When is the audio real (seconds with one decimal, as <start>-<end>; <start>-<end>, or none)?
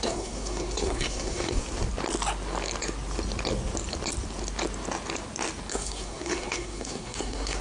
1.6-5.7